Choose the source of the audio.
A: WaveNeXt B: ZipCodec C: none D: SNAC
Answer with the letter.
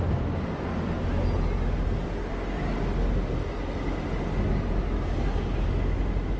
C